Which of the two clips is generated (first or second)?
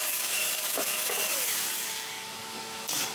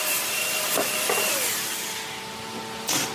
first